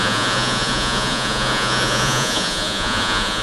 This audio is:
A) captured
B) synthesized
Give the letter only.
B